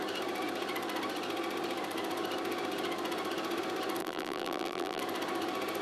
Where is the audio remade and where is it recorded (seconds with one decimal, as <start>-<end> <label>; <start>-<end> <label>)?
0.0-4.0 recorded; 4.0-5.0 remade; 5.0-5.8 recorded